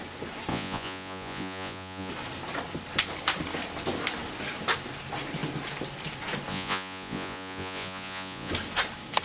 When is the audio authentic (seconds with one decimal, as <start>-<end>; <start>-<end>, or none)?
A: 0.0-0.5; 2.1-6.5; 8.5-9.2